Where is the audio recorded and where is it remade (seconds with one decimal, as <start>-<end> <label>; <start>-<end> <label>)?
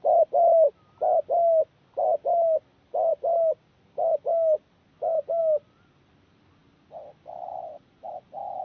0.0-8.6 recorded